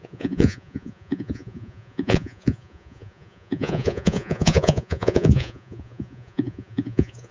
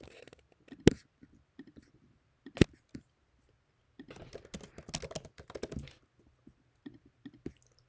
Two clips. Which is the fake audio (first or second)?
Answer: first